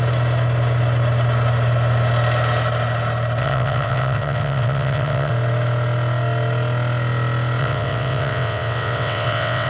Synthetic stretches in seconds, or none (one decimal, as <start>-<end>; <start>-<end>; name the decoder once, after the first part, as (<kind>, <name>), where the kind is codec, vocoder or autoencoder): 3.4-5.3 (vocoder, WaveNeXt); 7.6-9.7